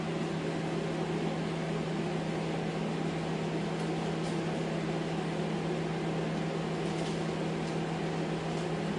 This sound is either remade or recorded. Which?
recorded